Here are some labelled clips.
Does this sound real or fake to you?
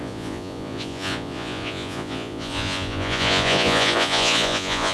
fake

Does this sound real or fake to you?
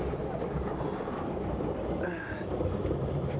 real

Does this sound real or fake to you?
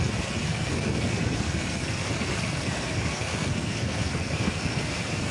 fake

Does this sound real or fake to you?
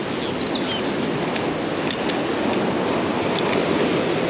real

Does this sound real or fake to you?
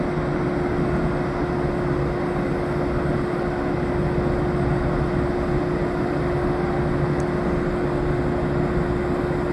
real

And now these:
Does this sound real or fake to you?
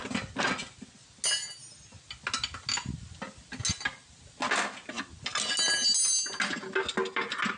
real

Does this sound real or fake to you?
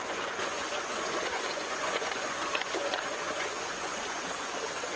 fake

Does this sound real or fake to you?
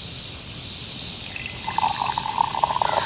real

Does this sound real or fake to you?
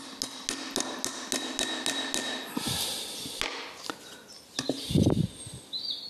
real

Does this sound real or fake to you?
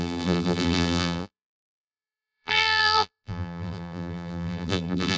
fake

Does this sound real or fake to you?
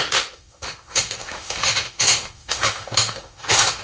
fake